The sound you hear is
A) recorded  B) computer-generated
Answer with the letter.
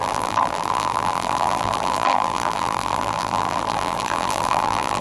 B